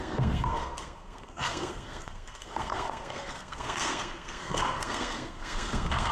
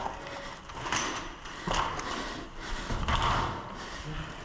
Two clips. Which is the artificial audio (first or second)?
first